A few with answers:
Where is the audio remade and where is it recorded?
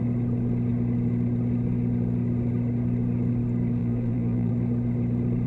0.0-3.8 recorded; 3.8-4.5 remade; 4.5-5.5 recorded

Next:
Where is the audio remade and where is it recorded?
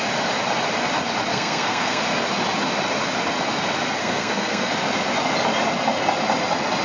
0.0-1.3 recorded; 1.3-2.0 remade; 2.0-4.0 recorded; 4.0-4.7 remade; 4.7-6.8 recorded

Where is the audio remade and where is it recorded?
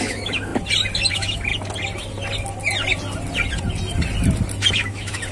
0.0-0.5 remade; 0.5-1.1 recorded; 1.1-1.5 remade; 1.5-4.7 recorded; 4.7-5.3 remade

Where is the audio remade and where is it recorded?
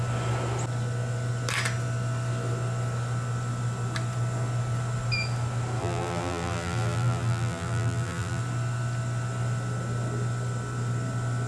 0.0-5.8 recorded; 5.8-8.4 remade; 8.4-11.5 recorded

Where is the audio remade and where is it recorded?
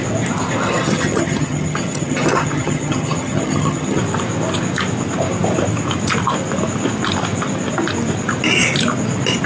0.0-0.6 recorded; 0.6-4.0 remade; 4.0-9.5 recorded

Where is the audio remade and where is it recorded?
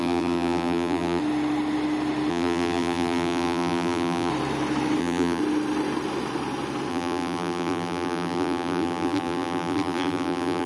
0.0-1.2 remade; 1.2-2.3 recorded; 2.3-4.3 remade; 4.3-5.0 recorded; 5.0-5.4 remade; 5.4-6.9 recorded; 6.9-10.7 remade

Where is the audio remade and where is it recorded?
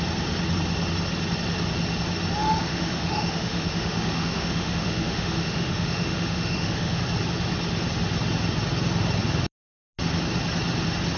0.0-2.4 recorded; 2.4-7.0 remade; 7.0-11.2 recorded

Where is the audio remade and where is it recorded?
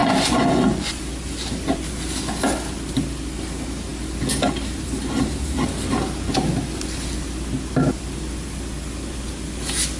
0.0-1.0 remade; 1.0-10.0 recorded